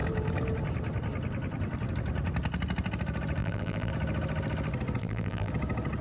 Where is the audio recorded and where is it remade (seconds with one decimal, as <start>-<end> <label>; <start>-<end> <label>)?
0.0-3.4 recorded; 3.4-3.9 remade; 3.9-5.0 recorded; 5.0-5.5 remade; 5.5-6.0 recorded